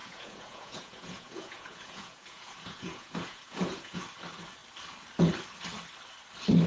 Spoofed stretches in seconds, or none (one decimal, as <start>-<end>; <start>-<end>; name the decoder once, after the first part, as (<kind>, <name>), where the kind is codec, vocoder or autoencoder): 0.0-4.0 (vocoder, Vocos)